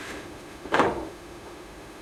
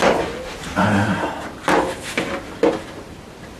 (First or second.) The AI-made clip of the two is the first